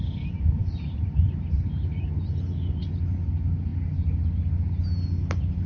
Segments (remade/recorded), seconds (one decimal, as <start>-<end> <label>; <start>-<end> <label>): 0.0-5.7 recorded